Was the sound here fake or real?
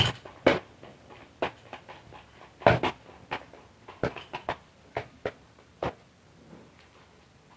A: real